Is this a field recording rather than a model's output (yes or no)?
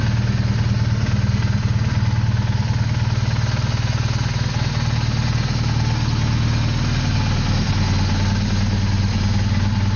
yes